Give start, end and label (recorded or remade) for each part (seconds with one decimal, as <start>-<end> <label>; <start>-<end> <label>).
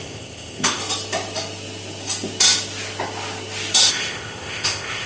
0.0-0.8 remade; 0.8-3.9 recorded; 3.9-5.1 remade